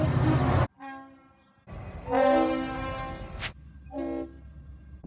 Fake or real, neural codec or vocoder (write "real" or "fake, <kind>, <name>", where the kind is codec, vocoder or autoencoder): real